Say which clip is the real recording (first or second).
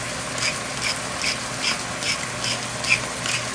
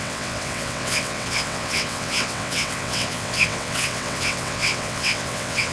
first